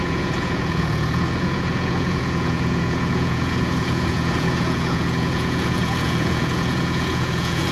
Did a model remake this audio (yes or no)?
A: yes